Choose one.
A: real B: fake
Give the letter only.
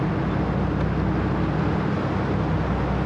A